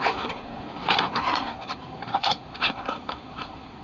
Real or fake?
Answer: fake